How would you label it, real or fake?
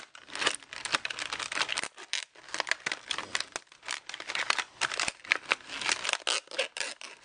real